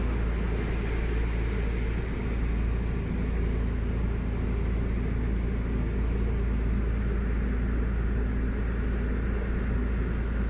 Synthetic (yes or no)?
no